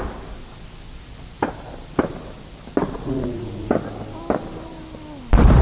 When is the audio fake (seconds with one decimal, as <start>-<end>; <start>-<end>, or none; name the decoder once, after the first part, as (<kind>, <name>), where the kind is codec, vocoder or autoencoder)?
2.8-3.7 (vocoder, Vocos)